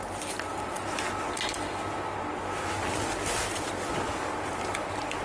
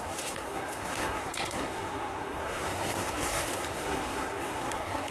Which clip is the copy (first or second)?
second